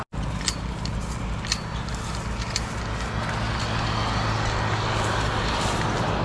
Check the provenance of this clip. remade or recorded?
recorded